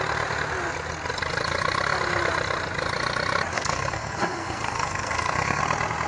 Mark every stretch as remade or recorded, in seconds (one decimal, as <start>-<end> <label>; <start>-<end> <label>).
0.0-3.5 recorded; 3.5-5.6 remade; 5.6-6.1 recorded